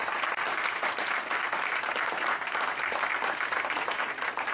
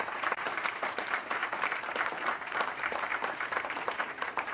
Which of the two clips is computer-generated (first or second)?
second